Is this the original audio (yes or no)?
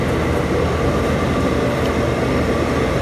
yes